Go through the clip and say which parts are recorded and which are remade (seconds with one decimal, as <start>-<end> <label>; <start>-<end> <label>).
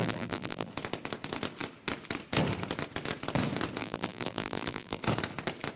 0.0-0.7 remade; 0.7-3.8 recorded; 3.8-5.0 remade; 5.0-5.8 recorded